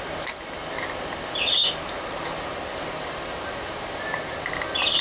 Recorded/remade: recorded